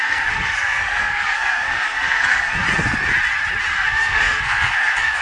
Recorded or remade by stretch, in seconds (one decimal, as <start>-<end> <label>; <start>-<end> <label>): 0.0-2.6 remade; 2.6-3.7 recorded; 3.7-5.2 remade